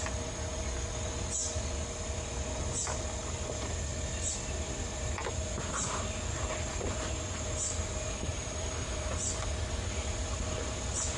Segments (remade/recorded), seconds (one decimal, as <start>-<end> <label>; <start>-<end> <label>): 0.0-8.3 recorded; 8.3-9.5 remade; 9.5-11.2 recorded